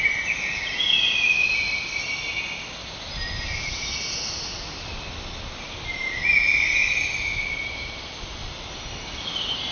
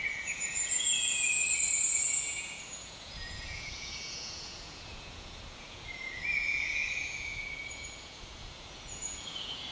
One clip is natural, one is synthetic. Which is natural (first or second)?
first